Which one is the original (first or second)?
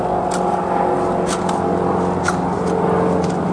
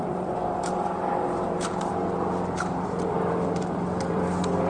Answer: first